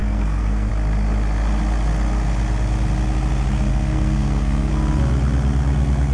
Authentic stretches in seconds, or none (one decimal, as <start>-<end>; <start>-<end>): 0.7-3.7; 4.7-6.1